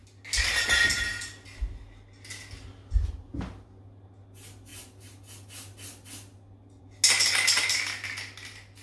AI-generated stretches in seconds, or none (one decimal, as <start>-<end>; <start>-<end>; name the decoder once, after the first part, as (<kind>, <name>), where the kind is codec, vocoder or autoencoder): none